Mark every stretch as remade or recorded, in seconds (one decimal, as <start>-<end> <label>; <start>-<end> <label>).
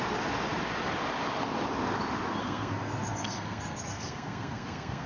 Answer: 0.0-2.4 recorded; 2.4-5.1 remade